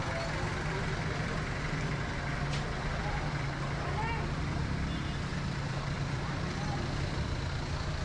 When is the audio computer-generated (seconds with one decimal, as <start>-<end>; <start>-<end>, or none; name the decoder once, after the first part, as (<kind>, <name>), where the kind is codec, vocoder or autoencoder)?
5.3-7.5 (vocoder, BigVGAN v2)